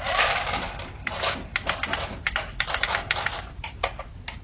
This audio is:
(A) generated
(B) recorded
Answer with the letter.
A